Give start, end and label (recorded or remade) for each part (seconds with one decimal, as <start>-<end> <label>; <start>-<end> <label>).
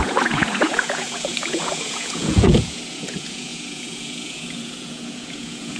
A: 0.0-5.8 remade